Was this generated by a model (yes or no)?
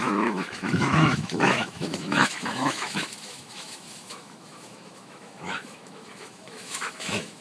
yes